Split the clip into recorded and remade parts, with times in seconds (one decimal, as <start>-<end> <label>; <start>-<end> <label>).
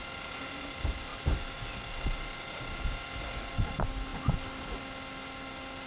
0.0-5.9 recorded